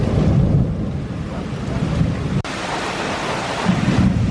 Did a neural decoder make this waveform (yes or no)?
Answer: yes